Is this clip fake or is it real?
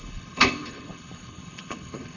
fake